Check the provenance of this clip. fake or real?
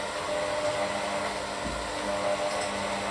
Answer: real